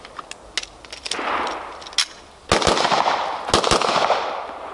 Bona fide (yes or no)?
yes